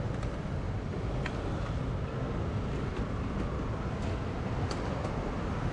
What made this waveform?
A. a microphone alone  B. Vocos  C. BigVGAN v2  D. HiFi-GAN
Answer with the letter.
A